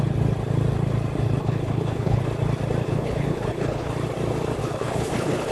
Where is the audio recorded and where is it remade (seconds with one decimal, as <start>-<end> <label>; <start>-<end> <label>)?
0.0-1.4 recorded; 1.4-2.2 remade; 2.2-2.8 recorded; 2.8-3.9 remade; 3.9-4.6 recorded; 4.6-5.5 remade